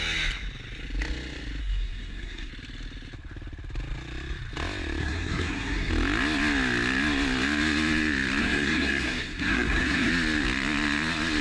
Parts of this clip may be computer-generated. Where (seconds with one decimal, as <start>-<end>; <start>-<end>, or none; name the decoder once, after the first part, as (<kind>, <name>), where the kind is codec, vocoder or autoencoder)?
1.6-2.5 (codec, SNAC); 5.0-5.9; 8.4-10.1